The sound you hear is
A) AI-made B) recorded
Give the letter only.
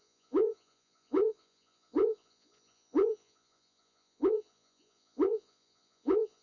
A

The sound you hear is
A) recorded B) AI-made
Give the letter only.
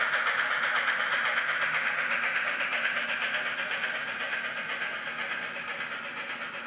A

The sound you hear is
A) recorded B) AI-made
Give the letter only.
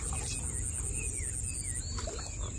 A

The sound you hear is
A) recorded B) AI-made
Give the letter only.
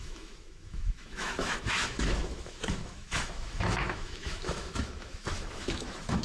B